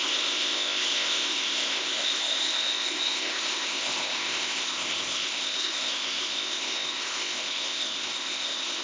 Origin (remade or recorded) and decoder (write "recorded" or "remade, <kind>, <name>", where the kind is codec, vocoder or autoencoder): remade, codec, ZipCodec